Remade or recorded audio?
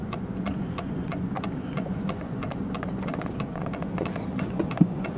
remade